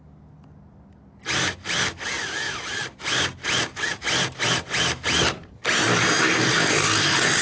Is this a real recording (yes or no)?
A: yes